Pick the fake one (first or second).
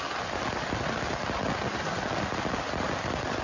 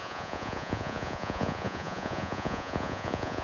second